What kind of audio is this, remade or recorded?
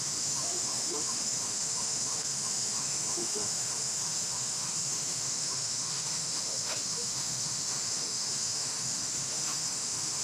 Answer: remade